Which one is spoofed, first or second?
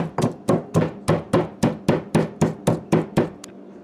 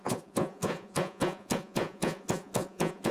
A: second